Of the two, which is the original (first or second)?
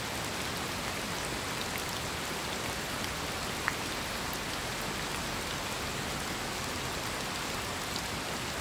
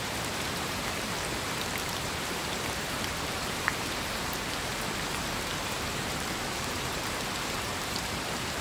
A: first